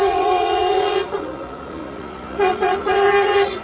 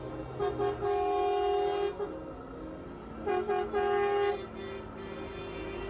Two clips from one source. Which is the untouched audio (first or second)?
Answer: second